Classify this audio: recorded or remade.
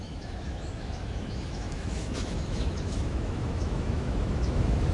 remade